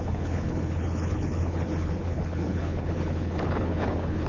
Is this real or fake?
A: fake